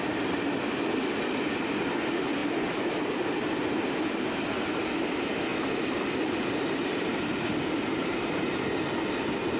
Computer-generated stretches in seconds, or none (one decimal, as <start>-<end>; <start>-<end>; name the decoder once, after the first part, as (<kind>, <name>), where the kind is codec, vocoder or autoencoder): 5.5-7.5 (vocoder, BigVGAN v2)